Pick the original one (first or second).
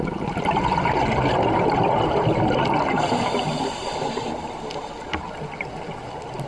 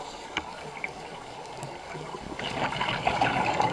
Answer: first